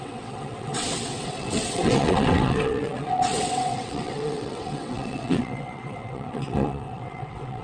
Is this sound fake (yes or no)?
yes